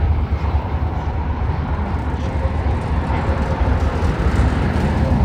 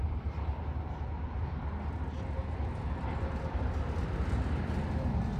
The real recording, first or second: second